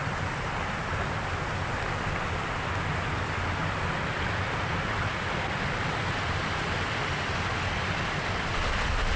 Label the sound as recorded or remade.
recorded